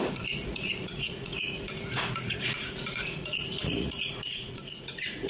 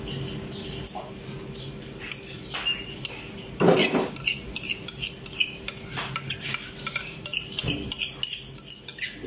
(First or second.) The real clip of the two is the second